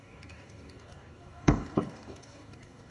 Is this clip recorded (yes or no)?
no